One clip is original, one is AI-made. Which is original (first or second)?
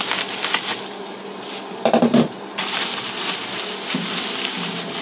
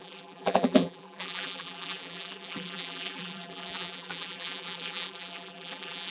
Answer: first